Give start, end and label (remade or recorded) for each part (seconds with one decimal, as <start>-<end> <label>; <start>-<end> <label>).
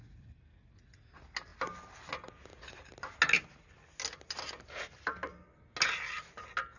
0.0-6.8 recorded